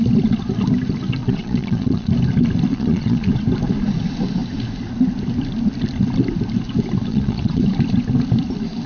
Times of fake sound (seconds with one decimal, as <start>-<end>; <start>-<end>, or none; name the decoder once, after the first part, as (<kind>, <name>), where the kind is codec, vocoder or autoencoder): 1.2-2.1 (vocoder, Vocos); 2.7-3.3; 7.1-7.6